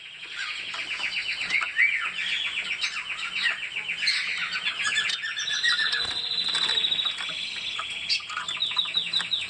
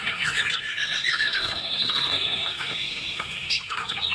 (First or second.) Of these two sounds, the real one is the first